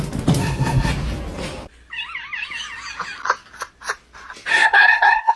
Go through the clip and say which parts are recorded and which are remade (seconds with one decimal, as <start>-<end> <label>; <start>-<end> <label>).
0.0-0.4 recorded; 0.4-0.9 remade; 0.9-4.5 recorded; 4.5-5.4 remade